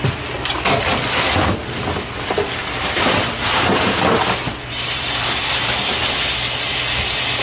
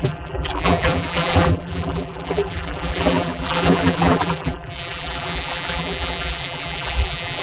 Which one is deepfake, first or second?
second